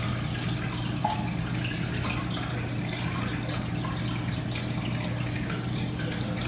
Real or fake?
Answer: real